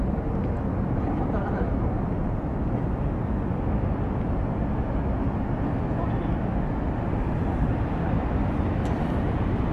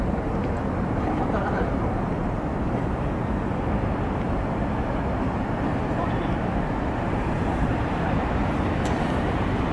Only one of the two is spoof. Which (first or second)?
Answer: second